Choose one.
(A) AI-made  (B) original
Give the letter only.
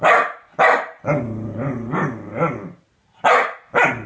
B